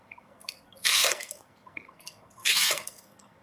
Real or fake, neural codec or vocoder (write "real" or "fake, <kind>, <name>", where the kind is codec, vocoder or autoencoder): fake, codec, SNAC